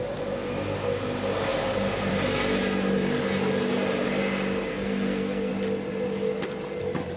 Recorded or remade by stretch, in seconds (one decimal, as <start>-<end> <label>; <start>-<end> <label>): 0.0-4.7 recorded; 4.7-5.5 remade; 5.5-7.2 recorded